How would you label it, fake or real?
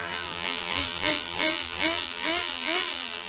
fake